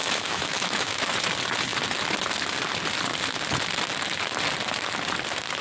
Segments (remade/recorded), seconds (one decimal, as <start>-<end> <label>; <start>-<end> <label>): 0.0-1.0 remade; 1.0-5.6 recorded